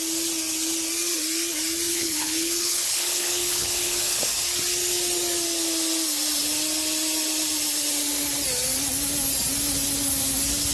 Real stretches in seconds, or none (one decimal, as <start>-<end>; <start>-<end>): 0.0-1.9; 4.2-10.7